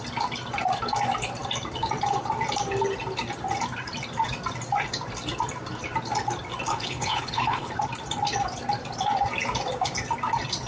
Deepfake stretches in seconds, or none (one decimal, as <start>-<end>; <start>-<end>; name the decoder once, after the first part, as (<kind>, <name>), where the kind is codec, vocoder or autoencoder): 6.7-7.7 (codec, HILCodec)